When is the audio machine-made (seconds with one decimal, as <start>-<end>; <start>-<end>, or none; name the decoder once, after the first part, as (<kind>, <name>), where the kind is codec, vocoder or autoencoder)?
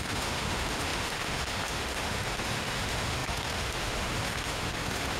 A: 0.0-5.2 (autoencoder, DAC-VAE)